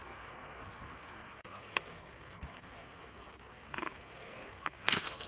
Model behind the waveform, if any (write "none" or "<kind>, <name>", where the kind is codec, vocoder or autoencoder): codec, SNAC